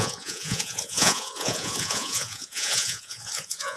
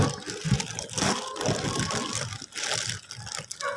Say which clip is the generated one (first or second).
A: first